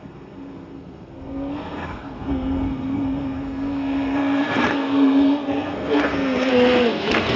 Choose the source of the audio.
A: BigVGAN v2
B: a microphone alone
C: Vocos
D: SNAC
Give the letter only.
D